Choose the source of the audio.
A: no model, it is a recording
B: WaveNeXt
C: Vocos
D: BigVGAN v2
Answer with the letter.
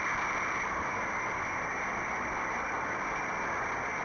A